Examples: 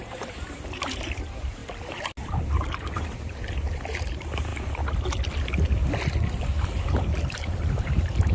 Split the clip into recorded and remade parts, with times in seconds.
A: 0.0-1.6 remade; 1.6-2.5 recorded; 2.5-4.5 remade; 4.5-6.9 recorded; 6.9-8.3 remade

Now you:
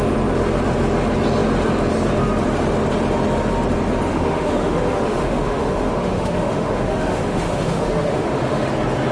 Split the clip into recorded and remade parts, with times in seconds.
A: 0.0-4.1 recorded; 4.1-8.7 remade; 8.7-9.1 recorded

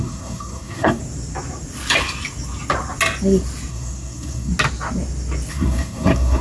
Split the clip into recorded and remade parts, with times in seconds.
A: 0.0-1.0 remade; 1.0-3.7 recorded; 3.7-4.5 remade; 4.5-5.5 recorded; 5.5-6.4 remade

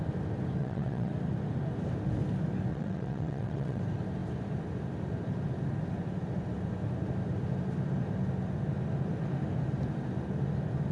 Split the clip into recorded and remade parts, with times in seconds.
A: 0.0-0.6 recorded; 0.6-1.1 remade; 1.1-2.7 recorded; 2.7-3.8 remade; 3.8-10.9 recorded

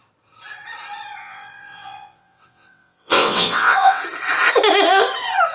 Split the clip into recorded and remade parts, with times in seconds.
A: 0.0-1.2 recorded; 1.2-4.0 remade; 4.0-5.5 recorded

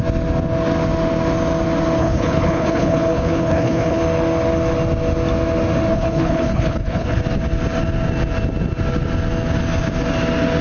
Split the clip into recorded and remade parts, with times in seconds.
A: 0.0-2.0 recorded; 2.0-4.0 remade; 4.0-5.9 recorded; 5.9-7.2 remade; 7.2-10.6 recorded